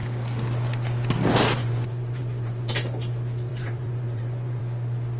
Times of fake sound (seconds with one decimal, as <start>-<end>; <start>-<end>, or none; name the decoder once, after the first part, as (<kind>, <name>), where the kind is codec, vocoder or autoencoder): 1.6-2.7 (vocoder, Vocos); 3.5-4.6

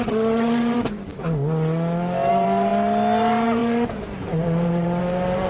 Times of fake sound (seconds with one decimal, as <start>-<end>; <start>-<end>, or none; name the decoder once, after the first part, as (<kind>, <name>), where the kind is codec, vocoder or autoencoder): 0.0-1.1 (vocoder, BigVGAN v2); 2.3-2.7; 3.2-5.5

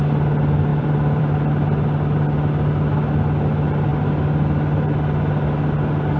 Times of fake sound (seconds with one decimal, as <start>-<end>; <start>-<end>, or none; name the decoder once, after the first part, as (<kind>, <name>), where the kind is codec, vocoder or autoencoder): 0.7-1.2 (vocoder, BigVGAN v2)